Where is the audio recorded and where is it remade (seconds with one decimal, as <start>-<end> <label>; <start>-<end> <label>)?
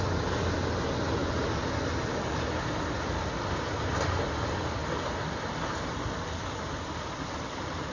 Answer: 0.0-7.9 recorded